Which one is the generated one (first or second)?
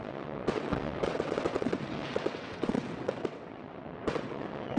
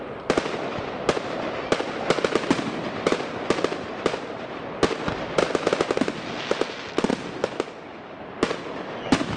first